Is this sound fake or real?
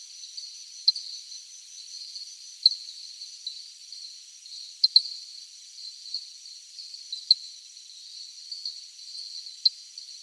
real